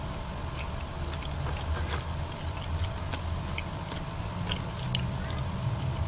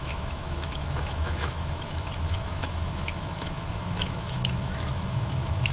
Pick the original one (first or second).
first